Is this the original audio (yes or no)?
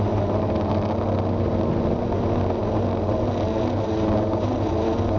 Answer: yes